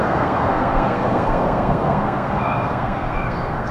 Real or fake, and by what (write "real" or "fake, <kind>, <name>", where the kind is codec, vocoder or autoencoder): fake, codec, SNAC